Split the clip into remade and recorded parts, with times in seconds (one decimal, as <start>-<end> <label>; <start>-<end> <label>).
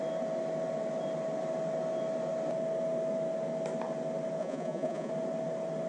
0.0-4.4 recorded; 4.4-5.1 remade; 5.1-5.9 recorded